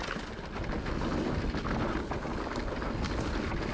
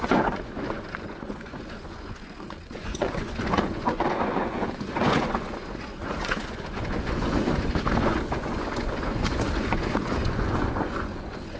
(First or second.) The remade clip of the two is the second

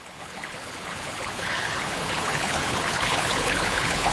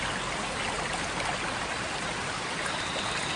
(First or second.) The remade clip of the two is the first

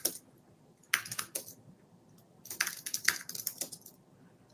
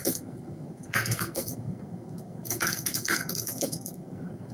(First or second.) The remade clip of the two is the second